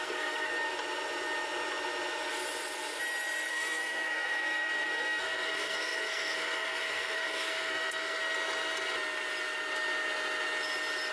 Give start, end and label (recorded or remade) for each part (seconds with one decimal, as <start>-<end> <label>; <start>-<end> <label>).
0.0-0.5 remade; 0.5-3.5 recorded; 3.5-8.2 remade; 8.2-11.1 recorded